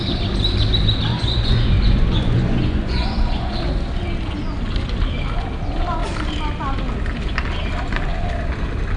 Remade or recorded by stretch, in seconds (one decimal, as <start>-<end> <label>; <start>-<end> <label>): 0.0-1.1 recorded; 1.1-3.6 remade; 3.6-9.0 recorded